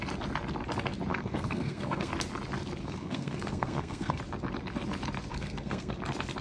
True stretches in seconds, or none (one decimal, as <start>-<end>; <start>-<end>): 0.0-1.1; 2.1-2.8; 4.2-5.3; 6.0-6.4